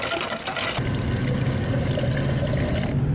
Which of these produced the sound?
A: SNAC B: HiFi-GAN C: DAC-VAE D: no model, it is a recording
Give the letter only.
D